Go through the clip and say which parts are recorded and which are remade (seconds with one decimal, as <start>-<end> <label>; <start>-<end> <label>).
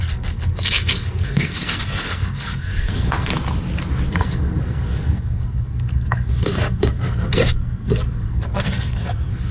0.0-3.3 remade; 3.3-4.1 recorded; 4.1-9.5 remade